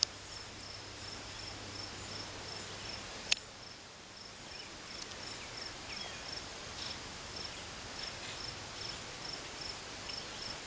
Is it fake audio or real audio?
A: real